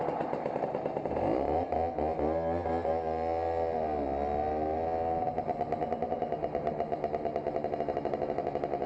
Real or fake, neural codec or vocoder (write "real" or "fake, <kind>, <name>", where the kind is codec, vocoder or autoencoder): real